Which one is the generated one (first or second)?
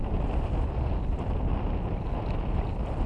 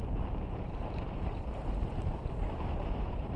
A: second